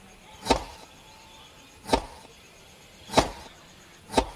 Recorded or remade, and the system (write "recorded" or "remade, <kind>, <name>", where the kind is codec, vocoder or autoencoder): remade, vocoder, BigVGAN v2